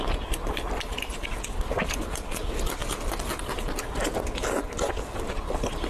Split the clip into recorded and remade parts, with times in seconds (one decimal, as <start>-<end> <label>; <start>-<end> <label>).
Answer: 0.0-5.9 recorded